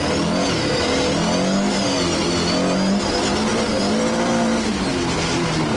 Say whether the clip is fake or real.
real